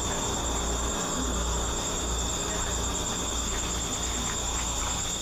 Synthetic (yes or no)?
no